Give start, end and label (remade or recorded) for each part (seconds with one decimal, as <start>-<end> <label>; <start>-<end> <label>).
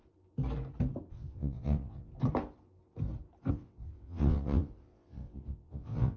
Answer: 0.0-1.1 recorded; 1.1-2.1 remade; 2.1-3.5 recorded; 3.5-6.2 remade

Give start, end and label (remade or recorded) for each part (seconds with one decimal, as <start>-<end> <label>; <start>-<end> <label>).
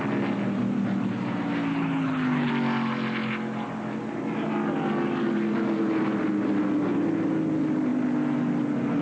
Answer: 0.0-1.7 recorded; 1.7-2.5 remade; 2.5-9.0 recorded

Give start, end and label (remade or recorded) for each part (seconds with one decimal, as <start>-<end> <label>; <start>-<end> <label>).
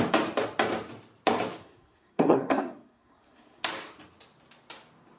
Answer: 0.0-1.6 recorded; 1.6-3.6 remade; 3.6-5.2 recorded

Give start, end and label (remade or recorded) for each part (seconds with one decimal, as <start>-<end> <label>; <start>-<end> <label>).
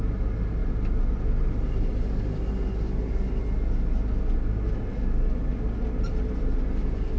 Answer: 0.0-7.2 recorded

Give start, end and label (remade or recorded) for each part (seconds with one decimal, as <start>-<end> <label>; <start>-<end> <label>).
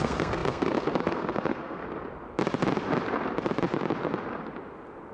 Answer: 0.0-1.8 remade; 1.8-5.1 recorded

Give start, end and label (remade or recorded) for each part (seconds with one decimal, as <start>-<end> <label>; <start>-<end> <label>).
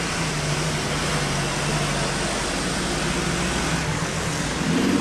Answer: 0.0-1.1 remade; 1.1-3.9 recorded; 3.9-5.0 remade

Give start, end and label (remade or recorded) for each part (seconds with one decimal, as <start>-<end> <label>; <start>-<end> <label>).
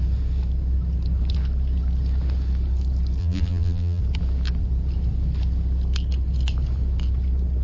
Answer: 0.0-3.2 recorded; 3.2-4.0 remade; 4.0-7.6 recorded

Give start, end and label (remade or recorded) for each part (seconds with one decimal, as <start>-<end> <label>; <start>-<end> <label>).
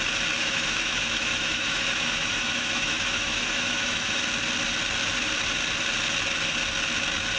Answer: 0.0-0.4 recorded; 0.4-4.2 remade; 4.2-7.4 recorded